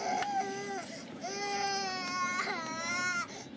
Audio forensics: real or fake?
real